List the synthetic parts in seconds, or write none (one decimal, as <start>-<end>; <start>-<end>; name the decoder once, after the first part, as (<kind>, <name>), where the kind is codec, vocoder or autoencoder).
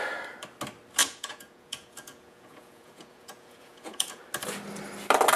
1.0-4.2 (vocoder, Vocos)